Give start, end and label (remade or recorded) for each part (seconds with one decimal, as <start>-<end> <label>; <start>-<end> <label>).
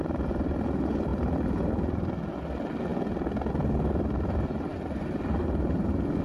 0.0-0.7 remade; 0.7-1.1 recorded; 1.1-2.4 remade; 2.4-4.7 recorded; 4.7-5.4 remade; 5.4-6.2 recorded